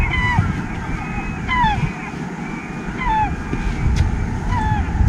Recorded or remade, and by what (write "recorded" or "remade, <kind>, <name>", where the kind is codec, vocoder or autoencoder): recorded